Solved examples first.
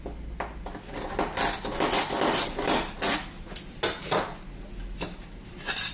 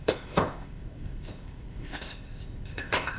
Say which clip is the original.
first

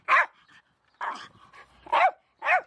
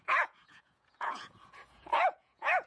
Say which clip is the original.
first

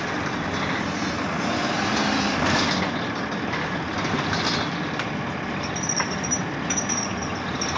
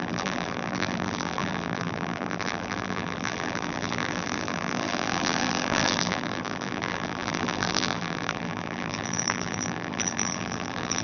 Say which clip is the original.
first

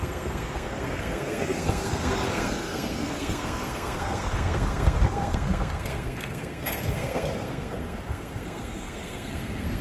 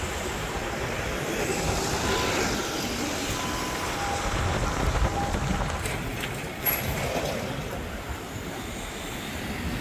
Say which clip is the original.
second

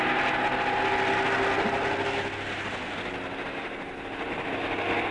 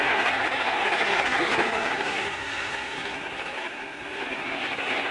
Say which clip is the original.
first